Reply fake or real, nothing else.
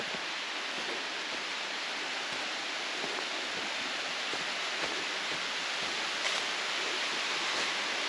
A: real